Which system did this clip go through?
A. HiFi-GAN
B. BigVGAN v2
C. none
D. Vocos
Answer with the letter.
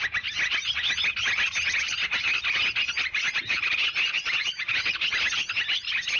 C